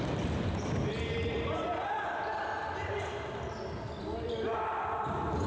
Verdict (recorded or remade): recorded